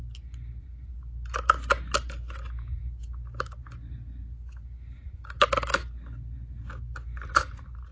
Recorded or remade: recorded